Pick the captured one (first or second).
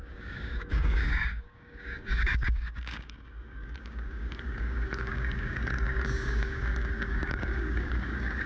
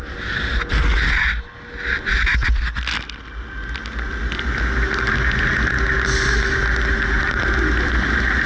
second